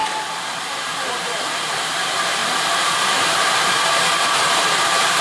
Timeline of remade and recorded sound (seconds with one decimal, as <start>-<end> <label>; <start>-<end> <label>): 0.0-5.2 remade